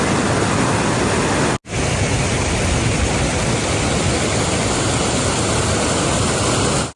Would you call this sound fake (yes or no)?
no